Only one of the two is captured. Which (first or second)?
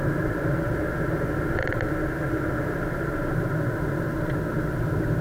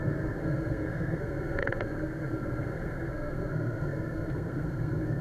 first